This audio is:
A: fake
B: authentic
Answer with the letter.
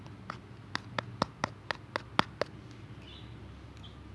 B